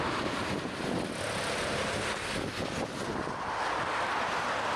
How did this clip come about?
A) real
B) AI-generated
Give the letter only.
A